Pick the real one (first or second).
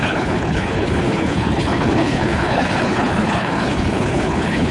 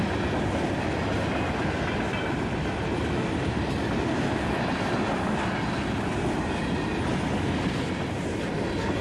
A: second